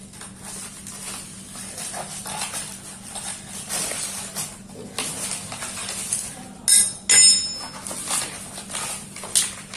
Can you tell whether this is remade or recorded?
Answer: recorded